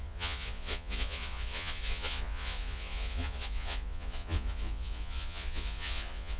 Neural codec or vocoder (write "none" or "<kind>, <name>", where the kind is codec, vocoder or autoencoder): vocoder, Vocos